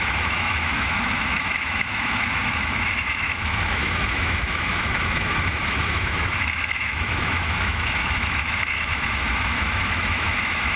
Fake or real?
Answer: fake